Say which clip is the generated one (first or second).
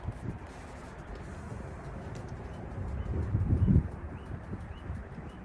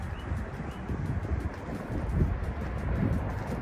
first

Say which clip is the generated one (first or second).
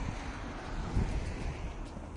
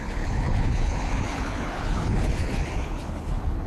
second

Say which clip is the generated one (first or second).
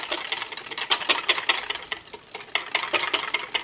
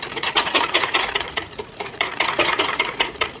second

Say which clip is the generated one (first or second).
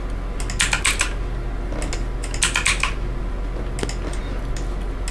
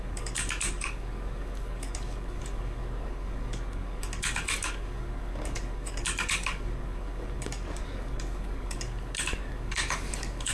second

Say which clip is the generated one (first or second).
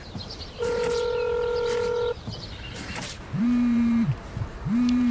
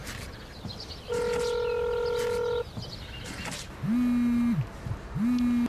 first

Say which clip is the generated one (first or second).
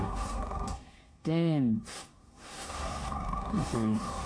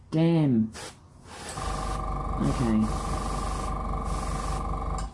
first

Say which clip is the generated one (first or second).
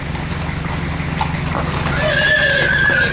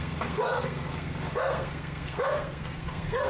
second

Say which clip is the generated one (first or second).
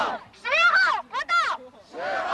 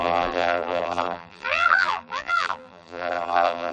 second